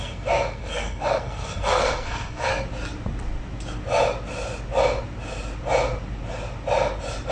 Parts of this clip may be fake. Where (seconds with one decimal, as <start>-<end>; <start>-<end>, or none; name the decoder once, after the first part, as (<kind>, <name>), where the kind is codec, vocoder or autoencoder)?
0.0-2.5 (codec, SNAC)